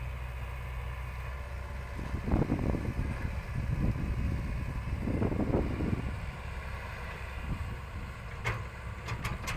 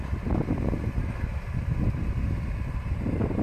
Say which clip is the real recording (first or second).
first